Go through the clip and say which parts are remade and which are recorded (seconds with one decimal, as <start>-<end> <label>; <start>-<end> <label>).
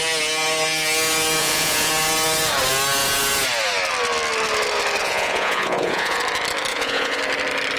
0.0-1.4 recorded; 1.4-1.9 remade; 1.9-5.0 recorded; 5.0-6.2 remade; 6.2-6.7 recorded; 6.7-7.2 remade; 7.2-7.8 recorded